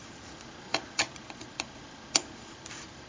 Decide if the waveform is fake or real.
real